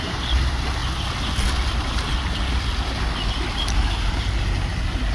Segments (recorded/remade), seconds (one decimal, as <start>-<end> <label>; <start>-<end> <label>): 0.0-0.8 remade; 0.8-3.5 recorded; 3.5-5.1 remade